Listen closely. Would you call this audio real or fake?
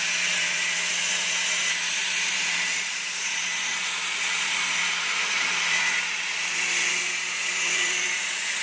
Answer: fake